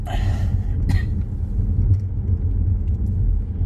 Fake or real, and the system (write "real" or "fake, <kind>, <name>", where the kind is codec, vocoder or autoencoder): real